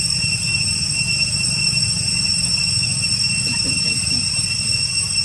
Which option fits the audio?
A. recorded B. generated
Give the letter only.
A